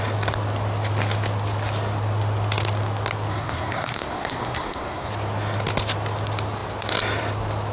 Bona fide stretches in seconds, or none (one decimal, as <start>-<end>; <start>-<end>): 0.0-3.3; 5.1-7.7